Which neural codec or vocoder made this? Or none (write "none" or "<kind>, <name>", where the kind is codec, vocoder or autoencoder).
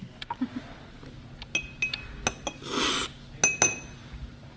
none